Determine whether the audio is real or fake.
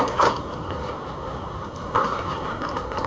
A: fake